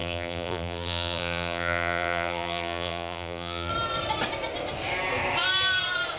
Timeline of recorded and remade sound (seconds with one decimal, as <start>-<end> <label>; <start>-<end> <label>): 0.0-3.7 remade; 3.7-6.2 recorded